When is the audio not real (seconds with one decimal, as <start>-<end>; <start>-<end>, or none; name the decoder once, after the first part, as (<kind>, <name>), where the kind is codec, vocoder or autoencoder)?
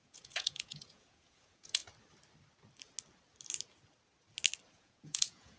0.0-1.8 (vocoder, Vocos); 4.7-5.6